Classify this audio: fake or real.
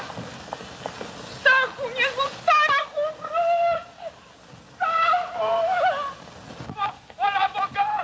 real